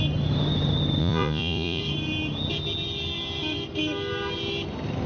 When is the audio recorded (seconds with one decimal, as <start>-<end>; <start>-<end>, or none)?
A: 0.0-1.0; 1.8-5.1